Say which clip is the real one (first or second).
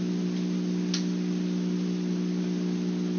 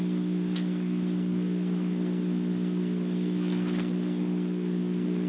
first